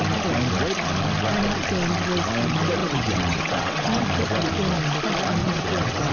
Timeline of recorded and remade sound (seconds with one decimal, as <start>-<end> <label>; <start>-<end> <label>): 0.0-2.8 recorded; 2.8-4.0 remade; 4.0-5.4 recorded; 5.4-6.1 remade